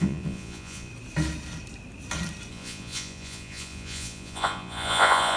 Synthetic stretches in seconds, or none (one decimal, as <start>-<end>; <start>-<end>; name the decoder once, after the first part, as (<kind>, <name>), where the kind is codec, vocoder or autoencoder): 0.0-0.9 (vocoder, Vocos); 2.5-5.4